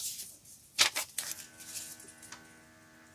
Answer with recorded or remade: recorded